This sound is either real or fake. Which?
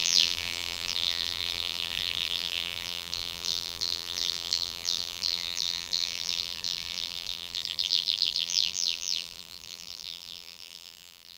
fake